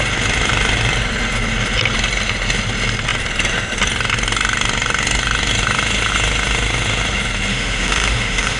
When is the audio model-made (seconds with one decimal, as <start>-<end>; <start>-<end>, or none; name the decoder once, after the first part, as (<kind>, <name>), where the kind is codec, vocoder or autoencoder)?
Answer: 7.5-8.6 (autoencoder, DAC-VAE)